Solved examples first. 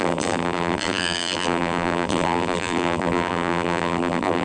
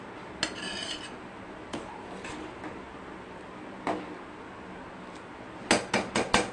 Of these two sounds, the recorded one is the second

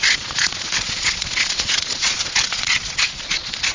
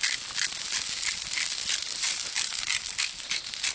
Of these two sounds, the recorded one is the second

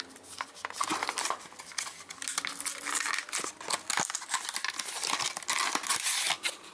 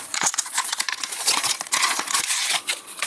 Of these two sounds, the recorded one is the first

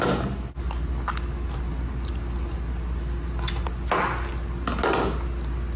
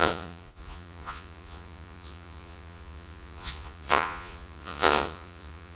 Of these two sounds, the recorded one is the first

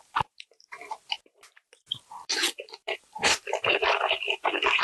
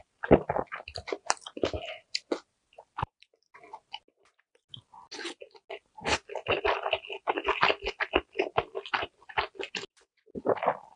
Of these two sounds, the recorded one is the second